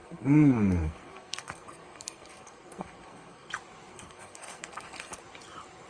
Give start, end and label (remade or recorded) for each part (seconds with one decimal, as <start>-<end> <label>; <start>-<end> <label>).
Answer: 0.0-3.5 remade; 3.5-3.9 recorded; 3.9-5.2 remade; 5.2-5.9 recorded